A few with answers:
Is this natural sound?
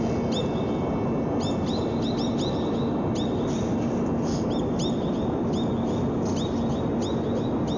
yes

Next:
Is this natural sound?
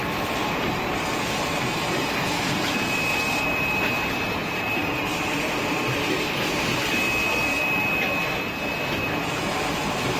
yes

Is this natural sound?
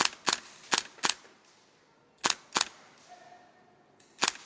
yes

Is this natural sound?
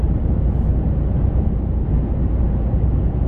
yes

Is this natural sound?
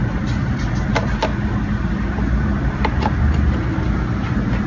yes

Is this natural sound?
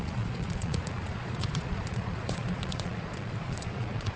no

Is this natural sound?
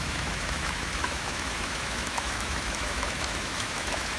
no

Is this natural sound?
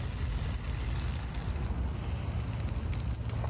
yes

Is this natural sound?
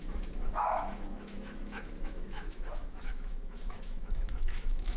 no